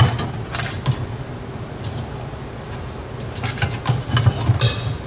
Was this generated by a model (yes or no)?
no